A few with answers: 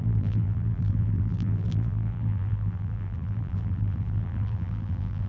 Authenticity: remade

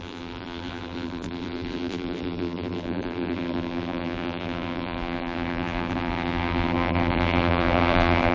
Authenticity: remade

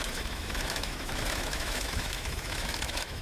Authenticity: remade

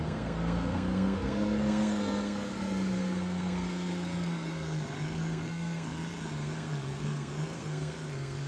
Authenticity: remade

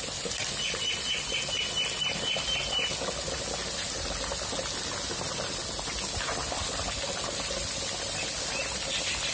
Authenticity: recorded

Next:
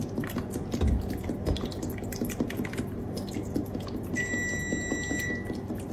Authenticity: recorded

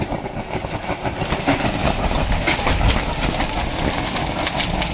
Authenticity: recorded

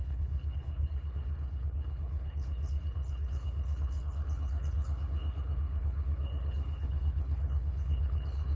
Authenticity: remade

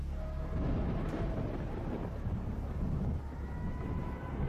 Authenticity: recorded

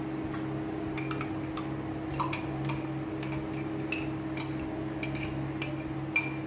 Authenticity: recorded